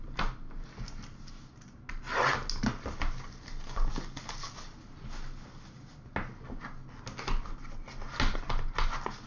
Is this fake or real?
real